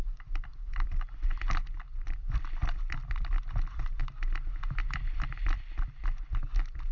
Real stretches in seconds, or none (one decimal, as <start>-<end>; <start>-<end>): 0.0-0.5; 4.0-4.8; 6.0-6.9